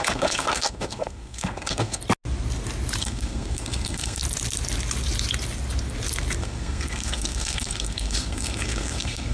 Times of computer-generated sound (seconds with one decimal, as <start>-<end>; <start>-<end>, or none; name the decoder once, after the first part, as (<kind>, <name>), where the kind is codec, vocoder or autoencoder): 0.0-2.0 (codec, SNAC); 3.0-4.2; 6.4-9.3